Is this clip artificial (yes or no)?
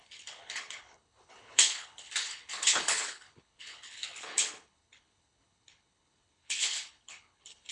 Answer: yes